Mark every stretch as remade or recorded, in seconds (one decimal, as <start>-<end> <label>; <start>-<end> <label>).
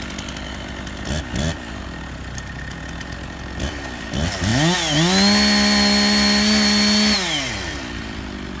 0.0-8.6 recorded